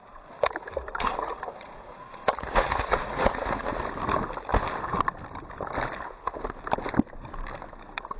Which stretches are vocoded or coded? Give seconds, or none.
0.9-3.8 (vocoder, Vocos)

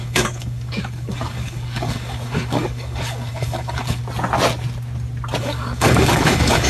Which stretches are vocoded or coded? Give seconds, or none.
0.0-4.0 (codec, DAC); 5.4-6.7

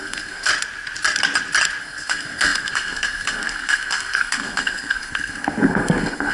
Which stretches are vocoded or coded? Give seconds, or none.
0.0-0.5 (codec, SNAC); 1.8-6.3

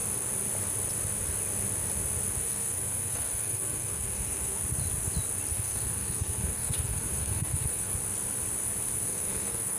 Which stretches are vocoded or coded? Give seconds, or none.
2.4-4.6 (codec, SNAC); 5.5-7.9; 9.0-9.8